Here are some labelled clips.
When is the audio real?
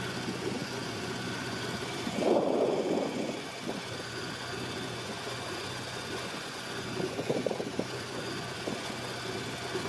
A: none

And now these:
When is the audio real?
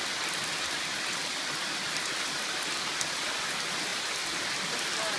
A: 0.0-1.6; 2.9-5.2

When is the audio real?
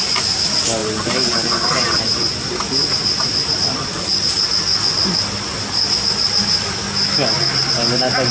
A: 0.0-8.3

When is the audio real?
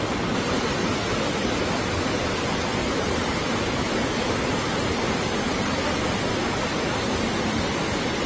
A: 0.0-2.7; 3.3-8.3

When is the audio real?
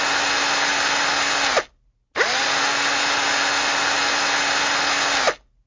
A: 0.0-5.7